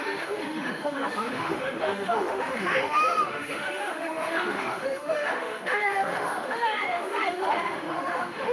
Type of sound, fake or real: fake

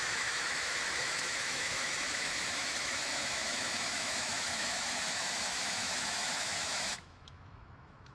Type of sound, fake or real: fake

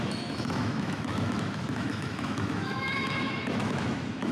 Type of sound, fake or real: fake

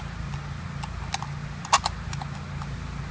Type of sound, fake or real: real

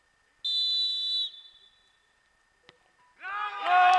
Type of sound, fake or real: real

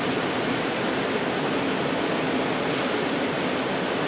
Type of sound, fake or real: real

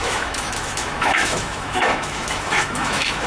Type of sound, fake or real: fake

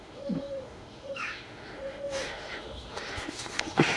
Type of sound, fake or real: fake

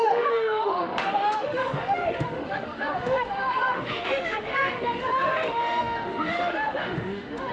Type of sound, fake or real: fake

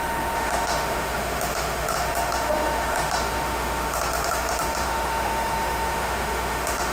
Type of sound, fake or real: fake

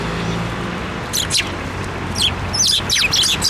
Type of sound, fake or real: real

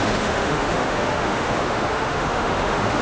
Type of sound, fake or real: fake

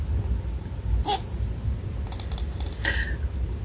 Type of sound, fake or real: real